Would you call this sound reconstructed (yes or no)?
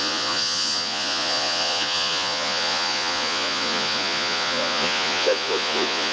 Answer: yes